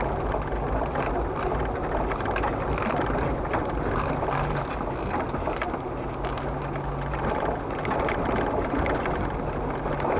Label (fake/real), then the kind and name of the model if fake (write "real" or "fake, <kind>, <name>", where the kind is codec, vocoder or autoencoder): real